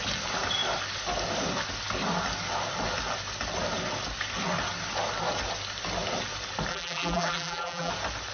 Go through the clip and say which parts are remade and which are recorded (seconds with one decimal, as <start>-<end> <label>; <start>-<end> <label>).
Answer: 0.0-6.7 recorded; 6.7-7.9 remade; 7.9-8.3 recorded